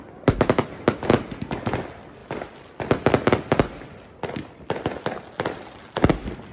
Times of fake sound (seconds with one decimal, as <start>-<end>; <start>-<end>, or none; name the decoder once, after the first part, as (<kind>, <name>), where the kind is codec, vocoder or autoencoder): 2.2-3.1 (vocoder, BigVGAN v2)